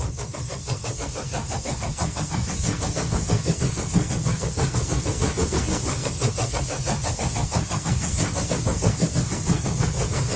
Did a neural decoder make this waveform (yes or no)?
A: yes